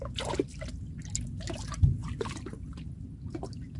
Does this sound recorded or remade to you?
recorded